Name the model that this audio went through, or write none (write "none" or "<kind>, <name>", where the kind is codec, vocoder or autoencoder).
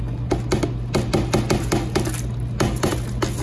none